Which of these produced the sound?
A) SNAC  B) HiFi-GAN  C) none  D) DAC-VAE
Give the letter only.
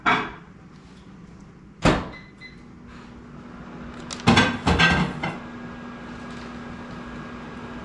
C